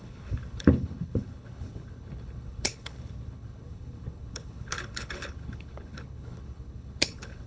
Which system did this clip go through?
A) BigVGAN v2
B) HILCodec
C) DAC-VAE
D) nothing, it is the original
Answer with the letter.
B